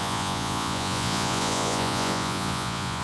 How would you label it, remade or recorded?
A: remade